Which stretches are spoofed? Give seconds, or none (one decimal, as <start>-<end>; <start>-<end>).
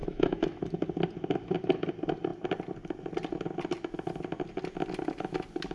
0.0-0.6